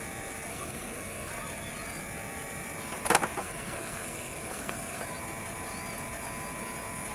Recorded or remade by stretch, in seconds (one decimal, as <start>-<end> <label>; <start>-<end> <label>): 0.0-0.5 recorded; 0.5-1.3 remade; 1.3-3.4 recorded; 3.4-5.0 remade; 5.0-7.1 recorded